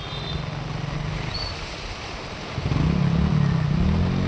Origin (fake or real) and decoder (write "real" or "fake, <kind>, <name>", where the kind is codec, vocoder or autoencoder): real